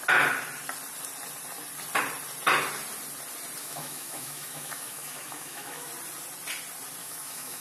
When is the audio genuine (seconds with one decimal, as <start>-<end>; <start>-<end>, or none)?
0.0-3.6; 5.9-7.0